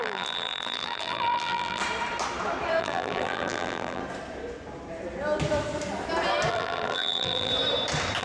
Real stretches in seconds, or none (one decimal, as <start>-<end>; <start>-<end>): 1.8-2.8; 4.0-6.5; 7.5-8.2